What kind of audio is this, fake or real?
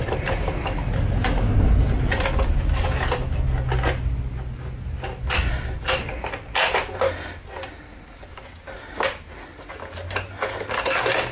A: real